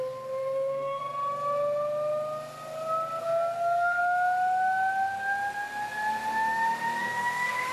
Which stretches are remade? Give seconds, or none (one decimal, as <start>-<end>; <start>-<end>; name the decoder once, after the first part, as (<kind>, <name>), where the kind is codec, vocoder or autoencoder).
0.0-1.0 (codec, SNAC); 3.2-4.0; 7.0-7.7